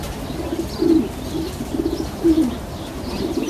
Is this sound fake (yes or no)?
no